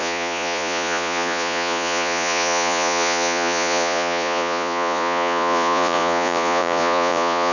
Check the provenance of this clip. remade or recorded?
remade